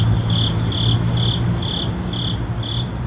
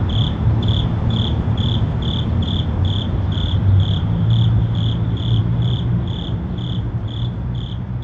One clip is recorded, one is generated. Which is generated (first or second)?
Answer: second